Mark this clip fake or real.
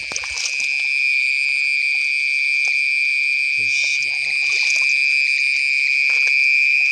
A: real